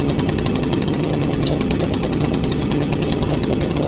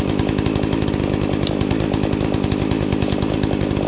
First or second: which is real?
second